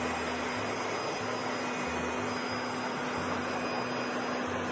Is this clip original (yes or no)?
yes